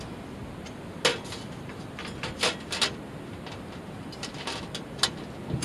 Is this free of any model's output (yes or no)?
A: yes